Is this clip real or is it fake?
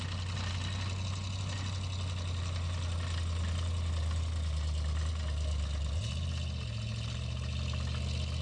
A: real